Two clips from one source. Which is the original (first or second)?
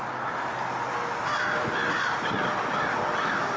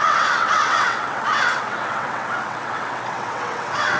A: first